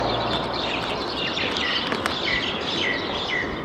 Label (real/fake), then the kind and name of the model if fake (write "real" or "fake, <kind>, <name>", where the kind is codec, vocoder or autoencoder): real